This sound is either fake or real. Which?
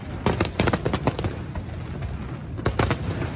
real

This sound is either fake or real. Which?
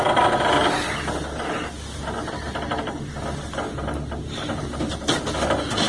real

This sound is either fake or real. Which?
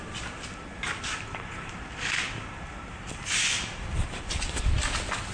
fake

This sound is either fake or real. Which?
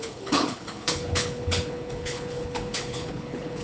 fake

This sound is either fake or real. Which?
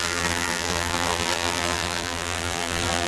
fake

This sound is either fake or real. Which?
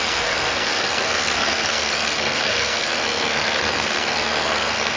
fake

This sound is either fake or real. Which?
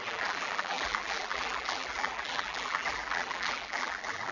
fake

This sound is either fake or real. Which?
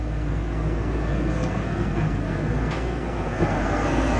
fake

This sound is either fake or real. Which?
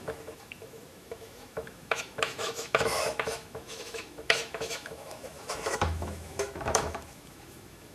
fake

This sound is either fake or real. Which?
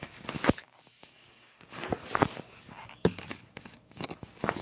fake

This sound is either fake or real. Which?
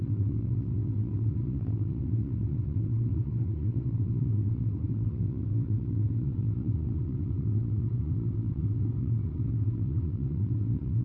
fake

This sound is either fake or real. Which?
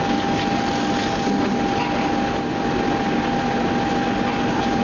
real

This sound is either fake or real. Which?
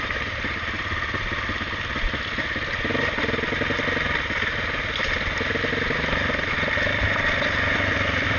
real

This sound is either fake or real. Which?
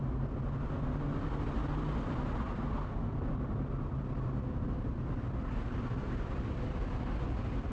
real